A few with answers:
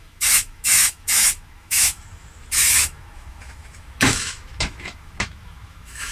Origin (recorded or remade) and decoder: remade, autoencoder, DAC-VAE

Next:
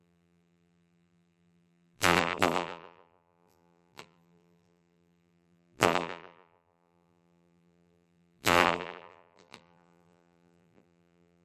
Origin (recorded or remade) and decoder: remade, vocoder, BigVGAN v2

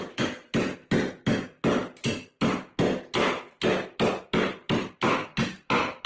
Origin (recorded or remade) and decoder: recorded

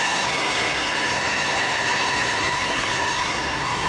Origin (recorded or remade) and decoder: remade, codec, SNAC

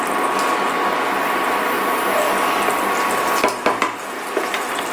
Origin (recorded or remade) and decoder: recorded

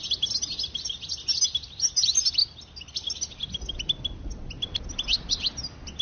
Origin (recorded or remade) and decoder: recorded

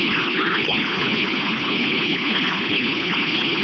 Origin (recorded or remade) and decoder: remade, codec, HILCodec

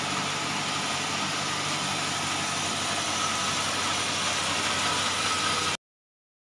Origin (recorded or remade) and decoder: recorded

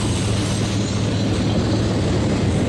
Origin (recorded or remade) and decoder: recorded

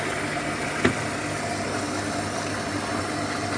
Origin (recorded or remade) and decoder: recorded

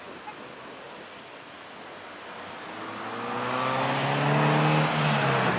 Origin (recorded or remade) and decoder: recorded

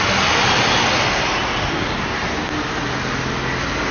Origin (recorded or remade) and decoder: recorded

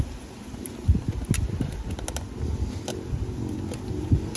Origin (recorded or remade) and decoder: recorded